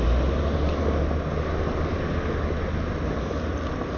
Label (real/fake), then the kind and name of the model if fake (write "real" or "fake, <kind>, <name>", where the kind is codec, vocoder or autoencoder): real